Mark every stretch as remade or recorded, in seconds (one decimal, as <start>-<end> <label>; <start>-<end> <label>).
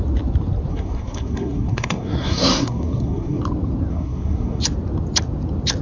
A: 0.0-0.7 recorded; 0.7-3.4 remade; 3.4-3.9 recorded; 3.9-4.6 remade; 4.6-5.8 recorded